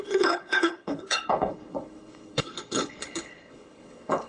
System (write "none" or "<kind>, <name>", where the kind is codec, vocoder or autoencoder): codec, HILCodec